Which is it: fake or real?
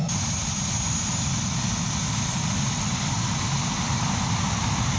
real